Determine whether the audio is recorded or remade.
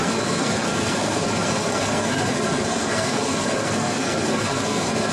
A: remade